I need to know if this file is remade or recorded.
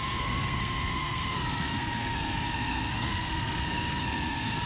remade